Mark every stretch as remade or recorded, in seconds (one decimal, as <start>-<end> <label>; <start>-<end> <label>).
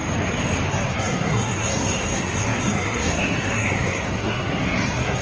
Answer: 0.0-0.7 recorded; 0.7-5.2 remade